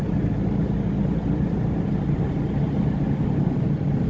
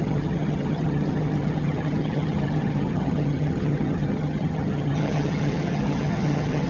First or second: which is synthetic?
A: second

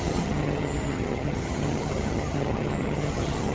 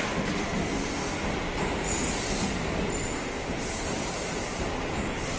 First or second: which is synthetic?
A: first